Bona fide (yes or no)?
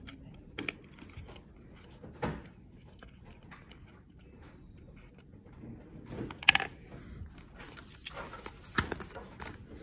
yes